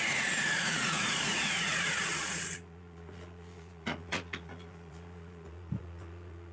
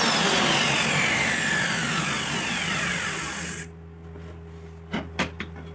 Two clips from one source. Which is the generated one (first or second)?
first